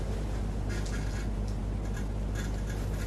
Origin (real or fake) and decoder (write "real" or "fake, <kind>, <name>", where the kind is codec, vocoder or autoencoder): real